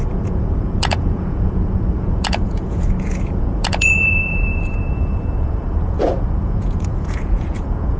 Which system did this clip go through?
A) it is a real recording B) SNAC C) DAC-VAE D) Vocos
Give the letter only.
D